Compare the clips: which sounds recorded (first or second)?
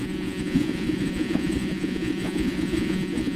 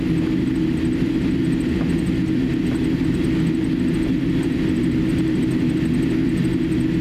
second